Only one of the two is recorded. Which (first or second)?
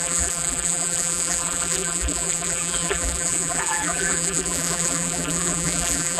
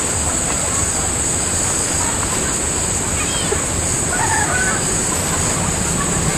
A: second